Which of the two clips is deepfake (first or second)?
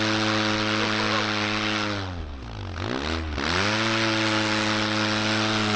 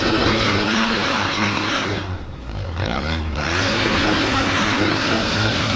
second